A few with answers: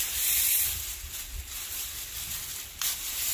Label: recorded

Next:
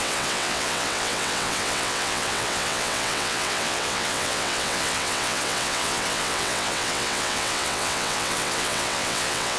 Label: remade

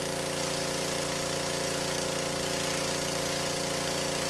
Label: recorded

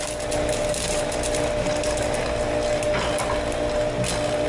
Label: recorded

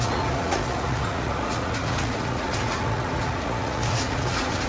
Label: remade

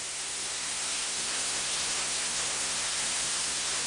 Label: remade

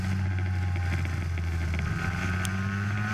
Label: recorded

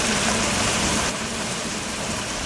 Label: remade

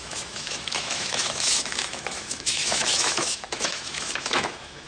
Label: remade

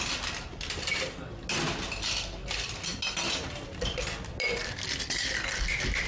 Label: recorded